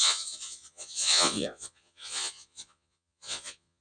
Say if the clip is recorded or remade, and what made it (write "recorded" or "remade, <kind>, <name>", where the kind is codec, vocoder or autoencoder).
remade, vocoder, Vocos